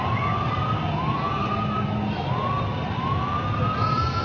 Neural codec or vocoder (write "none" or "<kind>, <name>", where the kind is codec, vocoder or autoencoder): none